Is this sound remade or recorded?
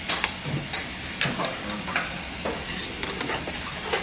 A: recorded